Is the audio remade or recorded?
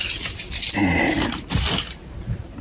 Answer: recorded